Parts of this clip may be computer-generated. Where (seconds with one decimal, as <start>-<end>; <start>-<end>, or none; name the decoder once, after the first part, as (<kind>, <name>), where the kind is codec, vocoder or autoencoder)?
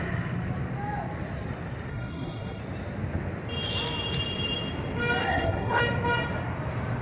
1.9-2.6 (codec, SNAC); 5.2-5.8